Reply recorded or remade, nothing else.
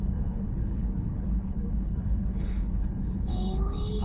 remade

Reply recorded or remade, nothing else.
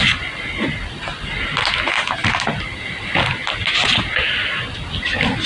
recorded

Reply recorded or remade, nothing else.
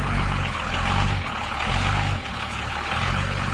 remade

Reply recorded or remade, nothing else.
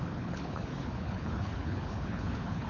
remade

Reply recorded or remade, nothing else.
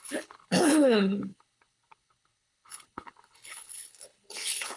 remade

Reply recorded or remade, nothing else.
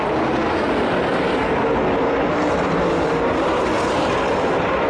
recorded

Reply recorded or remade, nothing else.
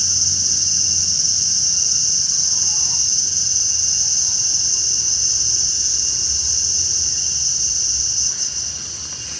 recorded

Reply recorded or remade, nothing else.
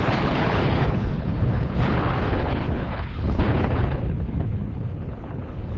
remade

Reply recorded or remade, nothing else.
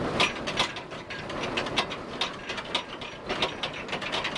recorded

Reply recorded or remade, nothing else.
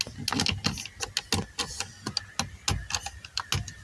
recorded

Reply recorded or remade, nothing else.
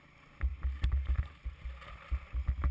recorded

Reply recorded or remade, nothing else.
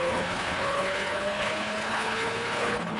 remade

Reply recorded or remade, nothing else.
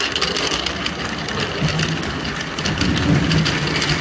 recorded